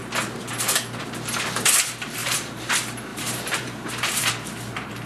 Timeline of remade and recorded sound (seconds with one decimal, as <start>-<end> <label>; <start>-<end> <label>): 0.0-2.2 recorded; 2.2-2.7 remade; 2.7-3.1 recorded; 3.1-5.1 remade